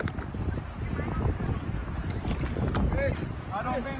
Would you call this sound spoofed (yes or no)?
no